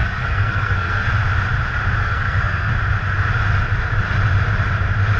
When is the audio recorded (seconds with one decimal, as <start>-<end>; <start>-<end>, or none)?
1.1-2.0; 2.7-5.2